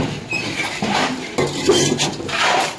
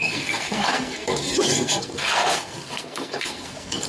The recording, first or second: first